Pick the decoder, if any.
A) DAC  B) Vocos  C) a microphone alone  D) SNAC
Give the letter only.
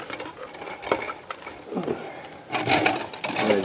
C